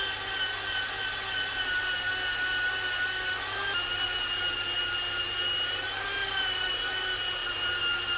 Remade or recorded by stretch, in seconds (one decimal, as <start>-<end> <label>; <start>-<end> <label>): 0.0-8.2 recorded